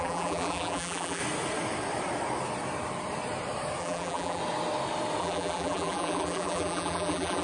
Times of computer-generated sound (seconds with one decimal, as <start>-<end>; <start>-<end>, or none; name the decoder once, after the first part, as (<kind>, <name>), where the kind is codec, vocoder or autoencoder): 0.0-1.2 (vocoder, BigVGAN v2); 3.8-4.4; 5.2-7.4